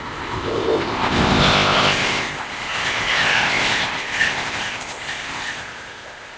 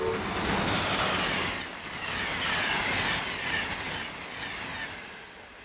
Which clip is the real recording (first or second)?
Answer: second